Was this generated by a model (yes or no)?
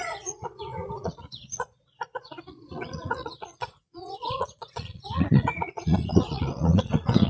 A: yes